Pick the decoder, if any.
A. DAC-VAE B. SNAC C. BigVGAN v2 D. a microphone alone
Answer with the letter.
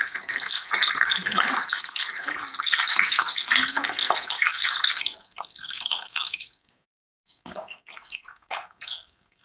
B